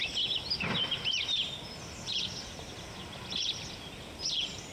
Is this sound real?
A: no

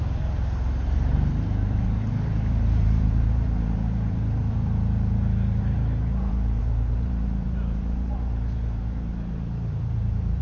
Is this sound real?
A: no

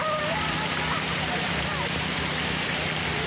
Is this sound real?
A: no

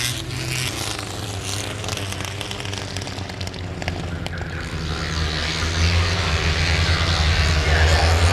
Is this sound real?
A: yes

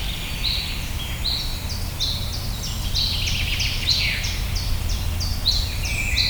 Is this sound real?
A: yes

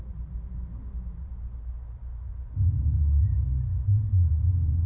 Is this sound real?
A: yes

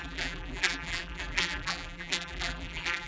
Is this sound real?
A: no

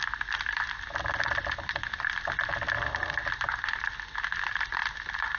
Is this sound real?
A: yes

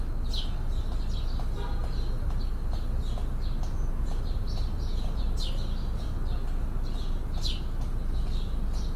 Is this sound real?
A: yes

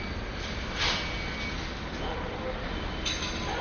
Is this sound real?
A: yes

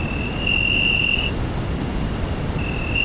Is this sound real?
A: yes